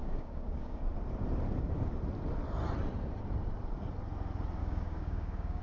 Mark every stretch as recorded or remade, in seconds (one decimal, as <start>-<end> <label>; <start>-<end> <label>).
0.0-0.8 remade; 0.8-4.6 recorded; 4.6-5.6 remade